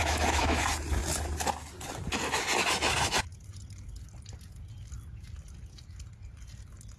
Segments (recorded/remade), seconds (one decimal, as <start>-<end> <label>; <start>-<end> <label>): 0.0-0.6 remade; 0.6-7.0 recorded

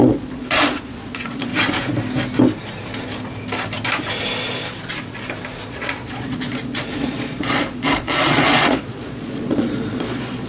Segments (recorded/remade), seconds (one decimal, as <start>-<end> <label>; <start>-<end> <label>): 0.0-1.5 remade; 1.5-5.7 recorded; 5.7-10.5 remade